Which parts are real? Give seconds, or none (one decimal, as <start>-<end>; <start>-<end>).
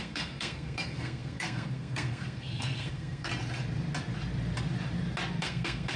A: 3.3-5.4